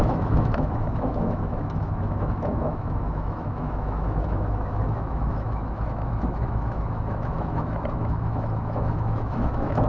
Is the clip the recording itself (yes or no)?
no